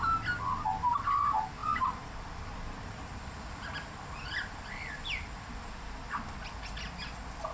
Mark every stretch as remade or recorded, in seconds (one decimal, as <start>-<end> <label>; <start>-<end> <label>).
0.0-1.6 recorded; 1.6-5.8 remade; 5.8-7.5 recorded